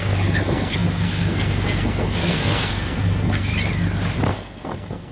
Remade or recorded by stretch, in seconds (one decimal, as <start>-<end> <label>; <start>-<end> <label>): 0.0-3.5 remade; 3.5-4.3 recorded; 4.3-5.1 remade

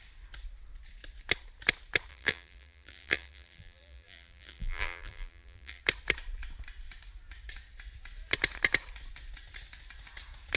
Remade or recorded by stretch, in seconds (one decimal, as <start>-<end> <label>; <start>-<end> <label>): 0.0-2.1 recorded; 2.1-5.8 remade; 5.8-10.6 recorded

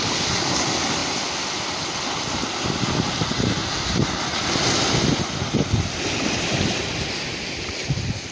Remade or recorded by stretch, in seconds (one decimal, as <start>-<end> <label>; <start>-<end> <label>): 0.0-8.3 recorded

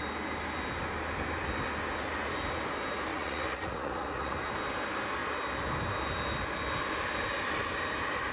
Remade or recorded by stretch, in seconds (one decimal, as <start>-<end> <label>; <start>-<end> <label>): 0.0-3.1 recorded; 3.1-4.5 remade; 4.5-8.3 recorded

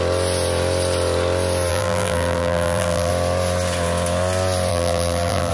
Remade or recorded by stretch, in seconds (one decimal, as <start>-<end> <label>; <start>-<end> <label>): 0.0-1.7 recorded; 1.7-3.1 remade; 3.1-4.7 recorded; 4.7-5.5 remade